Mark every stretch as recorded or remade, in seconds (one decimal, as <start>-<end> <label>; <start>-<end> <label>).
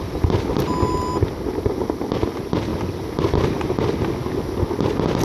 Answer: 0.0-5.2 recorded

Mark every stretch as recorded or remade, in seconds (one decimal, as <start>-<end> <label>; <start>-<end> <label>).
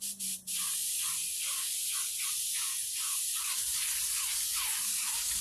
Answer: 0.0-5.4 recorded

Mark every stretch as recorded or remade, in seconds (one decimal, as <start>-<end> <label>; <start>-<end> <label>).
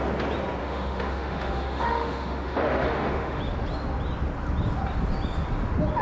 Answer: 0.0-0.6 recorded; 0.6-3.4 remade; 3.4-6.0 recorded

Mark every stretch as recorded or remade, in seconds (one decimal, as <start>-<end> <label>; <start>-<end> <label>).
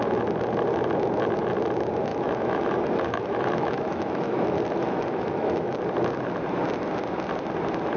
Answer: 0.0-2.1 recorded; 2.1-5.8 remade; 5.8-8.0 recorded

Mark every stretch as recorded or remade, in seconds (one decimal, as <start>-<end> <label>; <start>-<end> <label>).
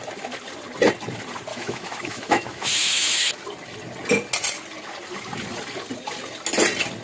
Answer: 0.0-1.5 recorded; 1.5-3.3 remade; 3.3-7.0 recorded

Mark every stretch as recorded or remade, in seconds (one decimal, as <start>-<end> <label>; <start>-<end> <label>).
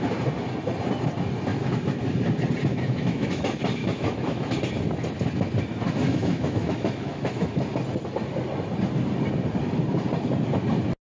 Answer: 0.0-1.5 recorded; 1.5-2.1 remade; 2.1-2.7 recorded; 2.7-3.4 remade; 3.4-3.8 recorded; 3.8-4.6 remade; 4.6-6.0 recorded; 6.0-7.6 remade; 7.6-11.2 recorded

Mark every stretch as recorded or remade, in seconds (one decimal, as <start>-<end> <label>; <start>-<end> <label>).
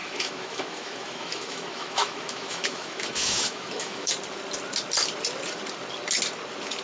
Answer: 0.0-4.1 remade; 4.1-6.8 recorded